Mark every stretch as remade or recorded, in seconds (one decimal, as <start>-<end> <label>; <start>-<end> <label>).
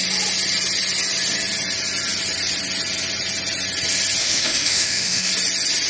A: 0.0-4.2 recorded; 4.2-5.3 remade; 5.3-5.9 recorded